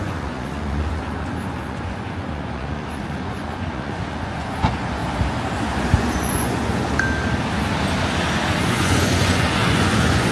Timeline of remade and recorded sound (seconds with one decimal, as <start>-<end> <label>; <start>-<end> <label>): 0.0-5.0 remade; 5.0-5.9 recorded; 5.9-6.7 remade; 6.7-8.6 recorded; 8.6-10.3 remade